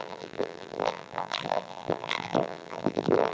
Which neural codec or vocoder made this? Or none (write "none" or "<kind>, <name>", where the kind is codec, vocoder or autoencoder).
vocoder, BigVGAN v2